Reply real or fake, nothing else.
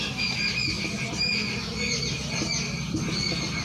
real